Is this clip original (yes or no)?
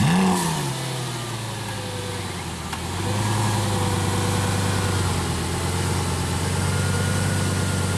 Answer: yes